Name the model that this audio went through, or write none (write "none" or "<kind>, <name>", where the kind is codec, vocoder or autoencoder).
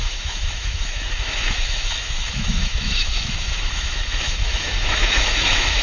autoencoder, DAC-VAE